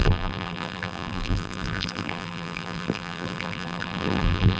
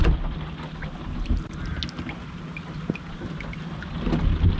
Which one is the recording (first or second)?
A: second